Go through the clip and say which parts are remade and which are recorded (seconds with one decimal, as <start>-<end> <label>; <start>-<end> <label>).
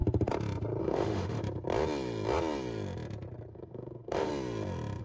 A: 0.0-0.8 recorded; 0.8-1.4 remade; 1.4-3.5 recorded; 3.5-4.3 remade; 4.3-5.0 recorded